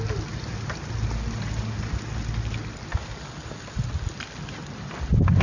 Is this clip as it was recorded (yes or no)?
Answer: yes